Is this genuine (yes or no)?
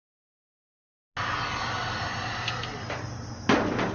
yes